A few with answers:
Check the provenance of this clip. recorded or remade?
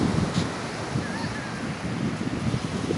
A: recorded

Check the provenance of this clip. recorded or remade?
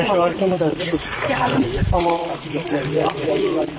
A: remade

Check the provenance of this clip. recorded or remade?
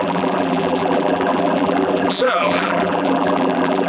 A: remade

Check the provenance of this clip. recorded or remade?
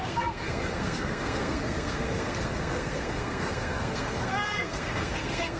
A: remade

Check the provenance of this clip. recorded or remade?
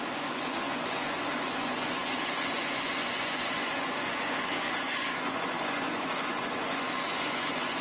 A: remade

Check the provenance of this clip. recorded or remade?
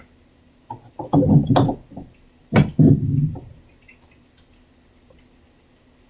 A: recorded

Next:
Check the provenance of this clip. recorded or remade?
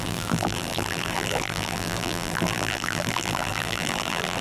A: remade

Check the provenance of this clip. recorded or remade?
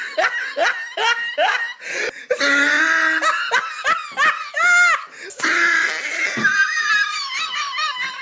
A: recorded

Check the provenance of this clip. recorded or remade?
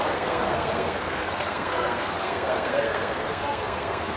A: remade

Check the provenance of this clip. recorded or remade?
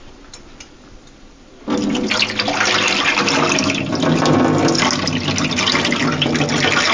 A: recorded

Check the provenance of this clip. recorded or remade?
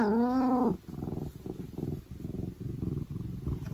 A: recorded